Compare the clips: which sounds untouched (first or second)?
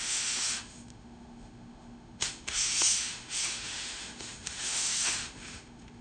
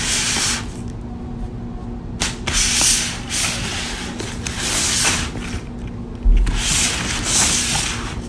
second